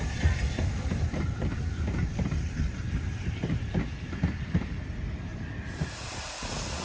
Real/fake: fake